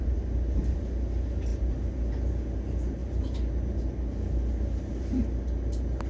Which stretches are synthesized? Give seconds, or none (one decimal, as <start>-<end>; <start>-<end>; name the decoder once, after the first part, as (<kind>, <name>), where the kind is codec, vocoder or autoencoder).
none